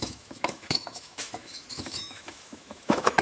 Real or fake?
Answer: fake